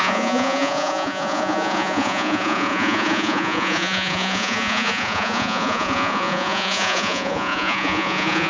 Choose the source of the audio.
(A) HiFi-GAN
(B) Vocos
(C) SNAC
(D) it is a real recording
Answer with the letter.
B